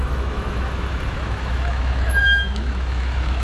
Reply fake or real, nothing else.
fake